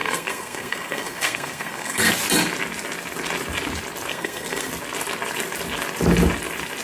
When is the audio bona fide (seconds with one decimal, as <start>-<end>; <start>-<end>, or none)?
2.1-4.1; 4.7-6.8